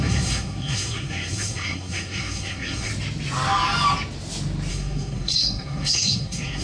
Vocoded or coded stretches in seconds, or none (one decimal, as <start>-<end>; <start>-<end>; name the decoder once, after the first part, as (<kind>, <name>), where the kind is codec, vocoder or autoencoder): 0.0-2.9 (codec, SNAC); 4.7-6.6